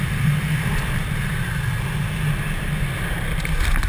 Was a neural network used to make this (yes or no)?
no